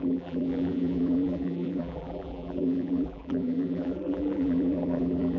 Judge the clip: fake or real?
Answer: fake